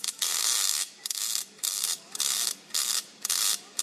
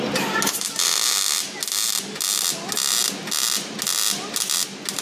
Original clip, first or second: second